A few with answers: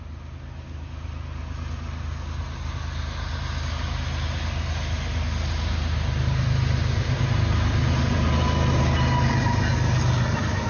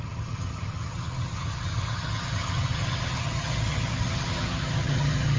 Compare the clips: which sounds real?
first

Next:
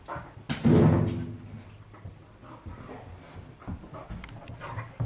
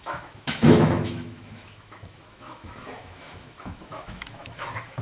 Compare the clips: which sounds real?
first